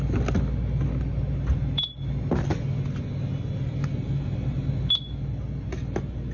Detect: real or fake real